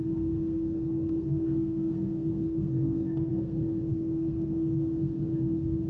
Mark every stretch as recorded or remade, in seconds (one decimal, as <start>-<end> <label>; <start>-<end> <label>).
0.0-5.9 remade